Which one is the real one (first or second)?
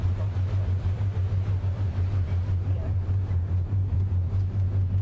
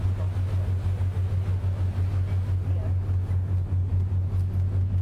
second